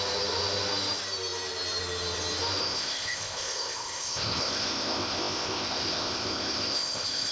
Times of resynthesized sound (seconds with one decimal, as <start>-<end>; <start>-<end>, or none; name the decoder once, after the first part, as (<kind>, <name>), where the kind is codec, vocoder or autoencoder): 2.6-7.3 (codec, ZipCodec)